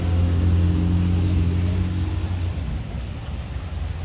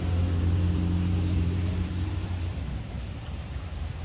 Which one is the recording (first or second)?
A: first